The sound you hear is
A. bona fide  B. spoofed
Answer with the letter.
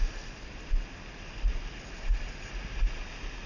A